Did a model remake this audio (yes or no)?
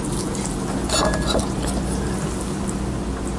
no